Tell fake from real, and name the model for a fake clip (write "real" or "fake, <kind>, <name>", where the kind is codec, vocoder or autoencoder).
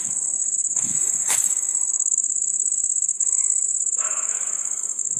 fake, autoencoder, DAC-VAE